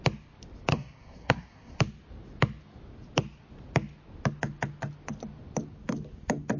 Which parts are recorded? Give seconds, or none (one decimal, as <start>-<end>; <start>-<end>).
0.0-0.7; 1.8-6.6